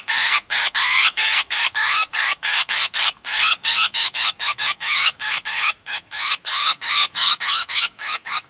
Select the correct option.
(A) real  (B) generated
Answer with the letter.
B